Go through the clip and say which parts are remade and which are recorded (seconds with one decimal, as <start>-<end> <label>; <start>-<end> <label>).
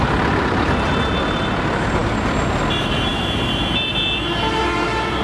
0.0-5.2 recorded